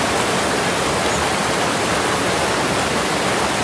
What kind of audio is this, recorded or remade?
recorded